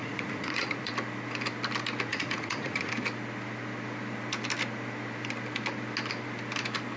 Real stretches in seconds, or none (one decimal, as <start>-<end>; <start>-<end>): 0.9-2.1; 2.9-7.0